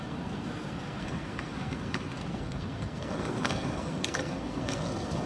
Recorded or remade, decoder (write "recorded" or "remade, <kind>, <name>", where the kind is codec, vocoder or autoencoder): remade, codec, SNAC